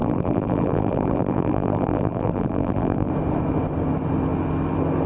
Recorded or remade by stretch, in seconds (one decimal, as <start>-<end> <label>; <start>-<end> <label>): 0.0-3.1 remade; 3.1-5.1 recorded